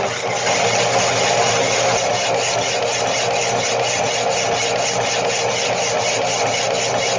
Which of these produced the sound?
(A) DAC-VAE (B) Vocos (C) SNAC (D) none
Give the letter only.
D